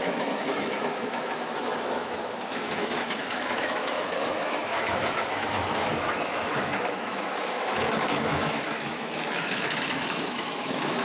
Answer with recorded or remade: remade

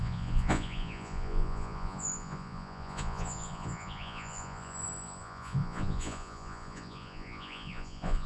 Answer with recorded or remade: remade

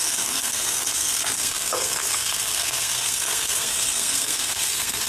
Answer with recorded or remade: remade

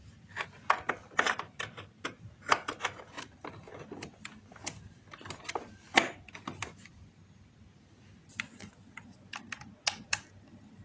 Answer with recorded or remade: recorded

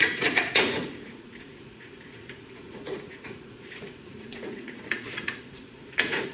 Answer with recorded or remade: remade